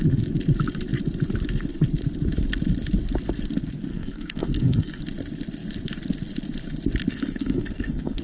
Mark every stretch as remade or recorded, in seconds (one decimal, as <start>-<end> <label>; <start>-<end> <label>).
0.0-3.9 recorded; 3.9-5.0 remade; 5.0-7.1 recorded; 7.1-8.2 remade